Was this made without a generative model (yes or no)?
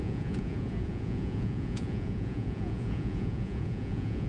no